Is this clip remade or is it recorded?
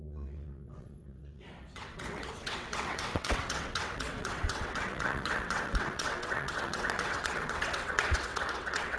remade